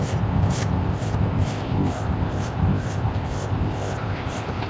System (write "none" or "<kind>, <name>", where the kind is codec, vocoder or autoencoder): codec, ZipCodec